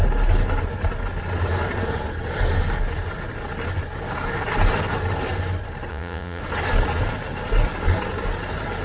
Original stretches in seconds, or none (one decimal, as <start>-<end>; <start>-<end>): 0.0-5.9; 6.4-8.8